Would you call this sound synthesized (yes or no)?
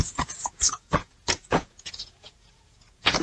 yes